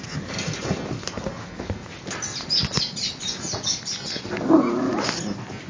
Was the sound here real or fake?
real